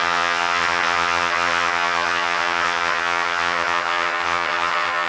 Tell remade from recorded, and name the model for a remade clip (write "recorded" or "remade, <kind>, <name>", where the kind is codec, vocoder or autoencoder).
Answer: remade, vocoder, HiFi-GAN